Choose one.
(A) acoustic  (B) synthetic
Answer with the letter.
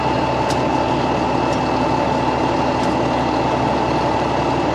A